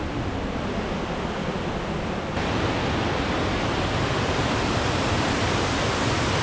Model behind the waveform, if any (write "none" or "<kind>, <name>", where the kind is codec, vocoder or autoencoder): none